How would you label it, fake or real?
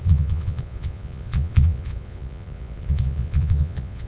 fake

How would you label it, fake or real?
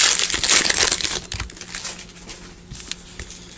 real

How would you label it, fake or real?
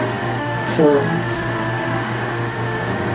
fake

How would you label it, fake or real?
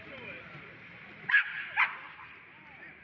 real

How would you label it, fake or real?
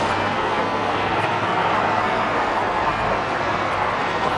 fake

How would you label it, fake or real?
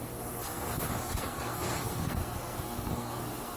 fake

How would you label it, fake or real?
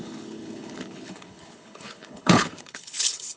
fake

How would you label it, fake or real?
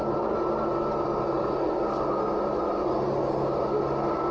real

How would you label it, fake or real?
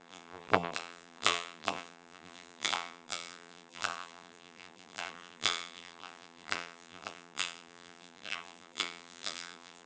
fake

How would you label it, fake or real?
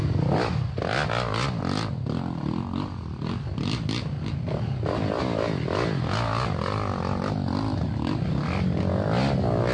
real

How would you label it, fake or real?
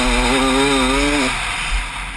real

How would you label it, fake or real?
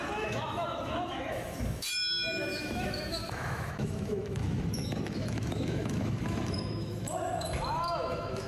fake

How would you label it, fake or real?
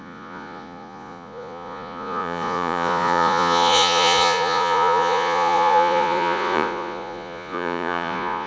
fake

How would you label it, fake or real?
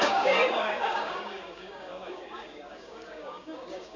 fake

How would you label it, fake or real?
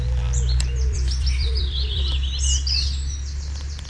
fake